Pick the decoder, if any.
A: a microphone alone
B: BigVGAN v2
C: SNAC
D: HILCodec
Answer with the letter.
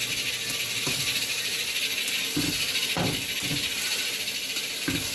A